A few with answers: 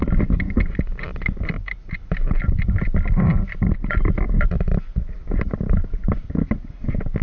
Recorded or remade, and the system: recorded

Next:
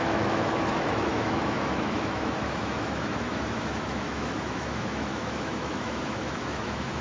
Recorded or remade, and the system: remade, autoencoder, DAC-VAE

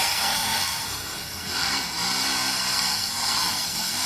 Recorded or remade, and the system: remade, codec, SNAC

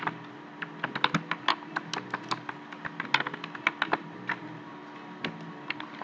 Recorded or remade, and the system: recorded